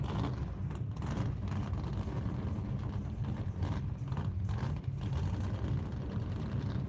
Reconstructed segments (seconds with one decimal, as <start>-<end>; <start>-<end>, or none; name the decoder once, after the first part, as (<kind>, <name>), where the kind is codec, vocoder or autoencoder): 0.4-1.9 (vocoder, BigVGAN v2); 3.2-4.4